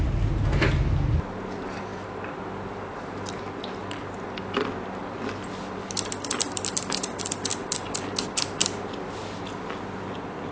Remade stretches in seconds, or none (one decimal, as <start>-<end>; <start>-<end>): none

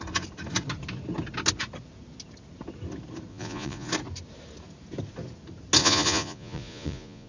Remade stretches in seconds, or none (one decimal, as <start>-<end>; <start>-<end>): 3.3-3.9; 5.8-7.3